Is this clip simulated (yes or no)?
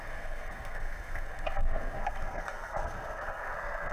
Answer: yes